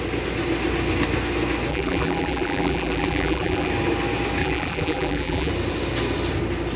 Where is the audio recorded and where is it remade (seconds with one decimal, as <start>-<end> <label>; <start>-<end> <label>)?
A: 0.0-1.7 recorded; 1.7-3.7 remade; 3.7-4.4 recorded; 4.4-5.5 remade; 5.5-6.8 recorded